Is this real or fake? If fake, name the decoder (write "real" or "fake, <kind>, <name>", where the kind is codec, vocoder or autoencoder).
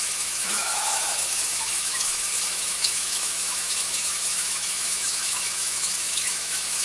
fake, autoencoder, DAC-VAE